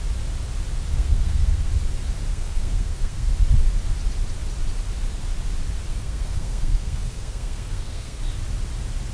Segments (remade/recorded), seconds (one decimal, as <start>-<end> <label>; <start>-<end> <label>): 0.0-0.9 recorded; 0.9-1.7 remade; 1.7-2.3 recorded; 2.3-3.3 remade; 3.3-5.9 recorded; 5.9-8.2 remade; 8.2-9.1 recorded